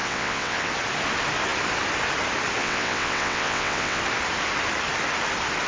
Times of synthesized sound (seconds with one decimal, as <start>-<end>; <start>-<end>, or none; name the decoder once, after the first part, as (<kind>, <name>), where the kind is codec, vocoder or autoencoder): 0.0-0.7 (vocoder, WaveNeXt); 2.6-4.0